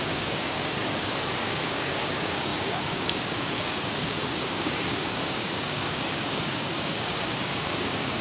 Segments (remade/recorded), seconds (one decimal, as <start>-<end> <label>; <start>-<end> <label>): 0.0-8.2 remade